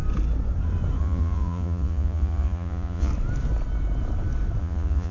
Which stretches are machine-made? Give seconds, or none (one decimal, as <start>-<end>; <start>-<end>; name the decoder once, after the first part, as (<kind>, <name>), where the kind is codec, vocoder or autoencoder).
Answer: 1.0-3.1 (vocoder, Vocos); 4.6-5.1